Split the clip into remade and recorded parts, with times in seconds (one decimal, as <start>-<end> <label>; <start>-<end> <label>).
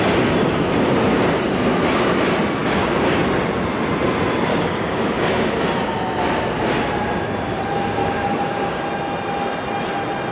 0.0-2.6 recorded; 2.6-3.2 remade; 3.2-4.5 recorded; 4.5-5.6 remade; 5.6-8.0 recorded; 8.0-8.8 remade; 8.8-10.3 recorded